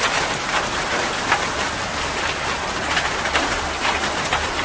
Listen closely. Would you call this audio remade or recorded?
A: recorded